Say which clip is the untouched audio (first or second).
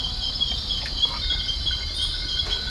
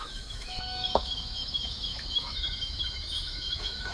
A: first